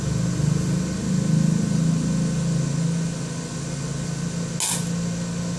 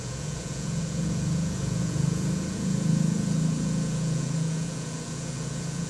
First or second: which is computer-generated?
second